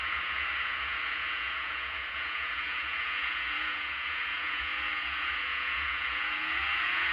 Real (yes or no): no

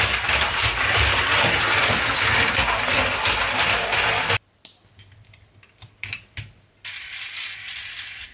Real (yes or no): yes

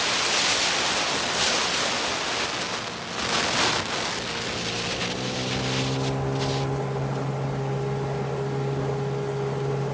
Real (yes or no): yes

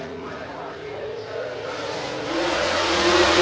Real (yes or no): no